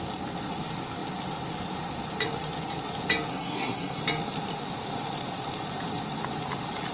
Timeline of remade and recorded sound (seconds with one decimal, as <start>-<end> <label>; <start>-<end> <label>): 0.0-3.3 recorded; 3.3-4.0 remade; 4.0-6.9 recorded